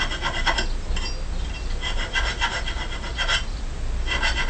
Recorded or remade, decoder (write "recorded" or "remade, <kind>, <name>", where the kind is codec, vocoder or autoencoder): recorded